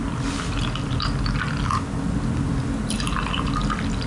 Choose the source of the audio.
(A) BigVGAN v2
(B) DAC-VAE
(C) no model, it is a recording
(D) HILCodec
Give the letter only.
C